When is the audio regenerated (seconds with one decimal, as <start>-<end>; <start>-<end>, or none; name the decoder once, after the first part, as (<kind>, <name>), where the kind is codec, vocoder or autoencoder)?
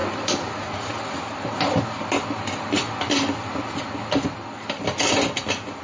none